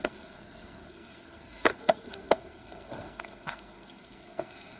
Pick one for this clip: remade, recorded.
remade